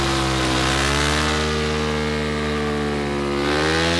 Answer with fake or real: real